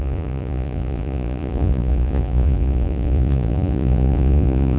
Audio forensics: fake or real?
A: fake